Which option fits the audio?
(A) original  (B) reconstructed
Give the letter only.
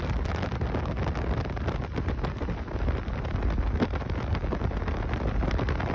A